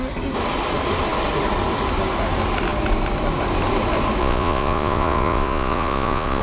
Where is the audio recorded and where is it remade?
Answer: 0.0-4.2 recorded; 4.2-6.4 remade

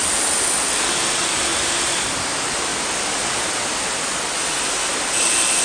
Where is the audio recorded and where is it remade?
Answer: 0.0-5.6 recorded